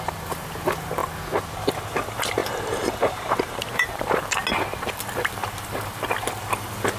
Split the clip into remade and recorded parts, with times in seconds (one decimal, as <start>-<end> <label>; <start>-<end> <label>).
0.0-2.4 recorded; 2.4-4.2 remade; 4.2-5.4 recorded; 5.4-6.0 remade; 6.0-7.0 recorded